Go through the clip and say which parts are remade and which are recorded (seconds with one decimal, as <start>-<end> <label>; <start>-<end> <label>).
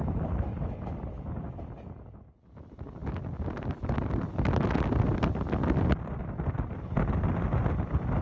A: 0.0-8.2 recorded